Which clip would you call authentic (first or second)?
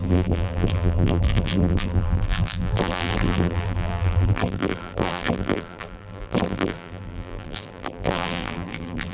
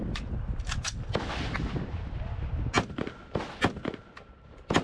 second